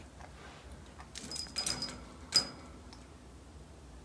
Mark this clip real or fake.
real